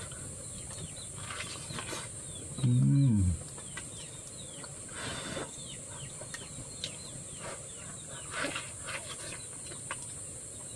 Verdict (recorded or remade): recorded